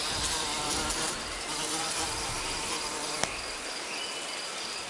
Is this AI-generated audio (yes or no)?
no